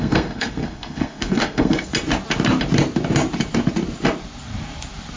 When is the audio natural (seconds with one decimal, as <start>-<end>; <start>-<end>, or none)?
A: 1.9-5.2